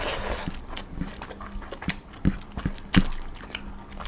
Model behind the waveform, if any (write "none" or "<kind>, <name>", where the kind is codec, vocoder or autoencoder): none